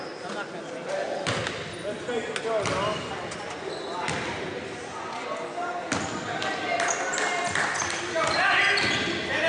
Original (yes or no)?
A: yes